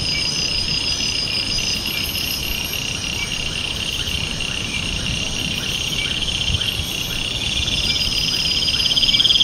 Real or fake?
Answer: real